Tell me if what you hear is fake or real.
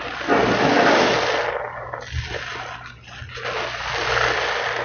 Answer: real